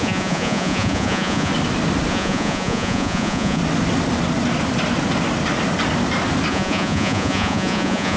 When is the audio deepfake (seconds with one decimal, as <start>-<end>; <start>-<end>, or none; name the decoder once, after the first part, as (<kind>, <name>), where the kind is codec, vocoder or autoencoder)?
0.0-1.5 (vocoder, Vocos); 2.1-3.6; 6.5-8.2

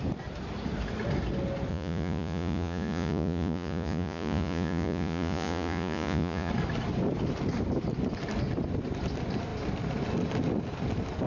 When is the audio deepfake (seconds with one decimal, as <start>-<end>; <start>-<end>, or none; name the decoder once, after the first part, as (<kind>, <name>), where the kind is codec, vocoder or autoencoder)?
1.7-6.5 (vocoder, Vocos)

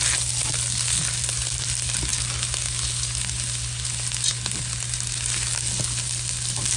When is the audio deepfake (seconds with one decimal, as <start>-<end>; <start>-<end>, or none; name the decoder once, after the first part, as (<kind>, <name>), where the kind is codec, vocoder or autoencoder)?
none

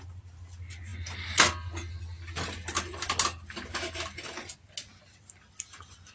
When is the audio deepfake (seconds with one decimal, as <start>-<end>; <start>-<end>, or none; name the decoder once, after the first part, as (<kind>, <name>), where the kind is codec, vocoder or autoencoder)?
none

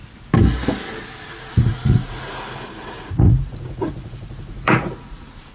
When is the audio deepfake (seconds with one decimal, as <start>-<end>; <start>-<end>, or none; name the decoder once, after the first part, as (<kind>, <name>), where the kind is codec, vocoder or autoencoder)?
1.5-5.5 (vocoder, Vocos)

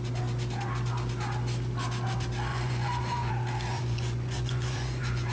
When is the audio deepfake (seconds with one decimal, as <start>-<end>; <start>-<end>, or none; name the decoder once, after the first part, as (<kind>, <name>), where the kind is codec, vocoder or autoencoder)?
2.5-3.3 (vocoder, Vocos); 3.7-5.3

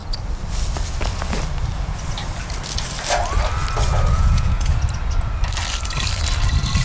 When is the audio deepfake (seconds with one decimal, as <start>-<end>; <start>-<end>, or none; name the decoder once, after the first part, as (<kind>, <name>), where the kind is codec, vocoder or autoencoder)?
4.1-4.7 (vocoder, Vocos)